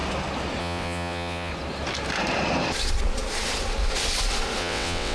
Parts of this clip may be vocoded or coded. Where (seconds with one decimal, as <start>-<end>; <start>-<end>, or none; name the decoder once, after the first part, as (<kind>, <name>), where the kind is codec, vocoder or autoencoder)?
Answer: 0.6-1.5 (vocoder, WaveNeXt); 4.6-5.1